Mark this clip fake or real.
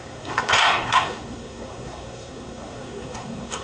fake